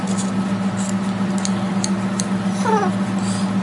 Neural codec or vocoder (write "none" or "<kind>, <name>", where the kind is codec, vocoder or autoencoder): none